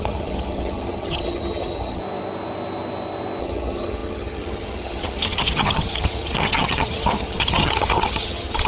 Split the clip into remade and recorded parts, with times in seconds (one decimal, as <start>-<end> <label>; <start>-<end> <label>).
0.0-2.0 remade; 2.0-3.4 recorded; 3.4-8.7 remade